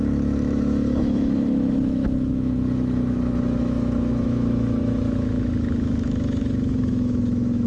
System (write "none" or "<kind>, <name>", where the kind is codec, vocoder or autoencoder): autoencoder, DAC-VAE